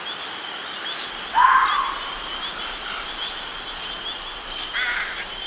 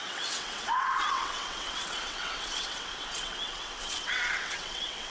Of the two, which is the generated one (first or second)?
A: second